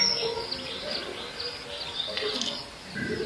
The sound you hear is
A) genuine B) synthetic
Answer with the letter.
A